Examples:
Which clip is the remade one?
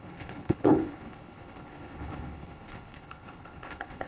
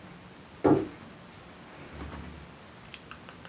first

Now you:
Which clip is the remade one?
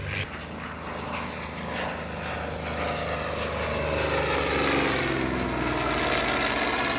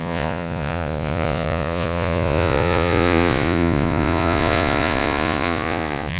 second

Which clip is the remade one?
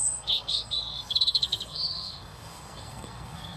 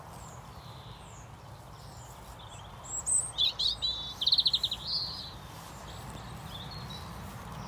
first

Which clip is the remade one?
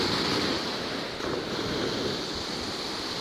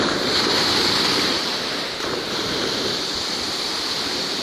second